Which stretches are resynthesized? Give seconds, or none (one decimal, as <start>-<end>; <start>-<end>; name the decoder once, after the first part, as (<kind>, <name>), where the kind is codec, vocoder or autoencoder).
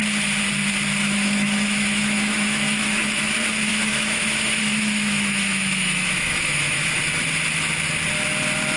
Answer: 1.0-3.2 (autoencoder, DAC-VAE); 3.7-7.0